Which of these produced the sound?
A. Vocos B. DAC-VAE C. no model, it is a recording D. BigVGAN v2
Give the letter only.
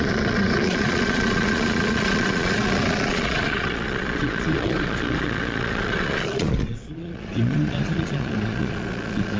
A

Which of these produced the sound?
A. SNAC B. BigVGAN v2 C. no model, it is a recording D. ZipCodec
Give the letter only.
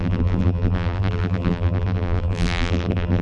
B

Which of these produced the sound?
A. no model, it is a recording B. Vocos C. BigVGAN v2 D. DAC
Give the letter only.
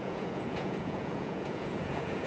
B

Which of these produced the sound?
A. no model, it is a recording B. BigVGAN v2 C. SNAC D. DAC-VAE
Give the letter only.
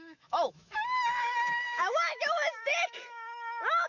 D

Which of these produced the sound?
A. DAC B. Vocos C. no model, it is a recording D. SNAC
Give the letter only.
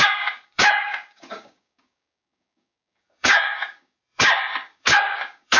A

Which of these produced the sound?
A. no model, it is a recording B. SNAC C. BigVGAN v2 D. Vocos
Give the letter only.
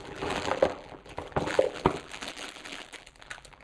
C